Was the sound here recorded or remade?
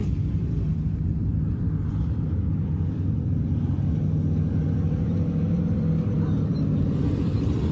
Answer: remade